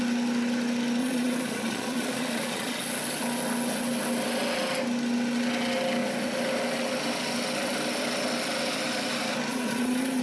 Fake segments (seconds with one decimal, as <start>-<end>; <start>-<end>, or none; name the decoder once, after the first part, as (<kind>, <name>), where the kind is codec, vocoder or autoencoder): 1.0-2.8 (vocoder, Vocos); 9.5-10.2